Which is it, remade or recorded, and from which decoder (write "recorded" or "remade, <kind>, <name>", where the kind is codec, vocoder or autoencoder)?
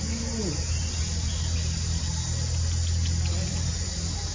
recorded